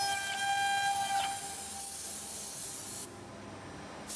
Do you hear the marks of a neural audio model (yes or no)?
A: no